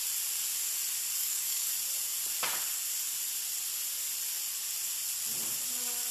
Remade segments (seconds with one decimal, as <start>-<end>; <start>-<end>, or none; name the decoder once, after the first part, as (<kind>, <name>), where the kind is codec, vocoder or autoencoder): 1.2-1.7 (codec, DAC)